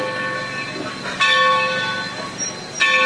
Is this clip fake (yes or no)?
no